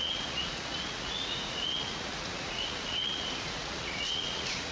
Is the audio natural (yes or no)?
no